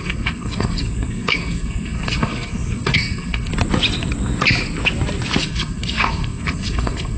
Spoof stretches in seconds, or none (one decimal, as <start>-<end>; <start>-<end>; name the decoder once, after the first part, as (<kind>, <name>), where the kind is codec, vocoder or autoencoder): 0.0-3.5 (codec, SNAC); 5.4-7.2